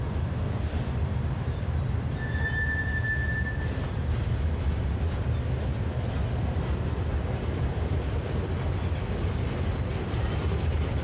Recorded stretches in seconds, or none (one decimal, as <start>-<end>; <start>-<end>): 0.0-11.0